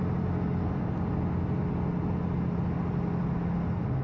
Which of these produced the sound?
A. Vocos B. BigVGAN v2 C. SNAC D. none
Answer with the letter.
D